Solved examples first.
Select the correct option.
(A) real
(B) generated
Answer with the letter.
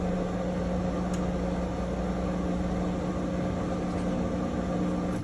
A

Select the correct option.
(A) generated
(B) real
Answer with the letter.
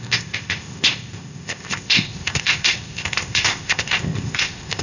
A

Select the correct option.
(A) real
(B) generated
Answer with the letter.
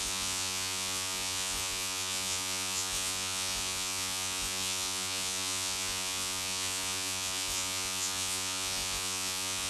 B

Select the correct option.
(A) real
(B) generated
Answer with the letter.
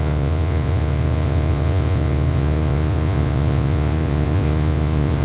B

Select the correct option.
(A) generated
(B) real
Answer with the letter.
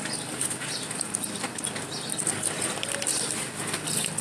B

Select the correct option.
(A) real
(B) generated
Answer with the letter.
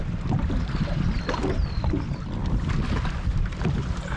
A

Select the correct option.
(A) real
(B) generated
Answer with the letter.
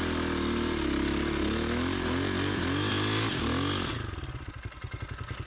A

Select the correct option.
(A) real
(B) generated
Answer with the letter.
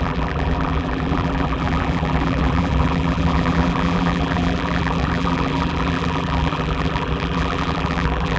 B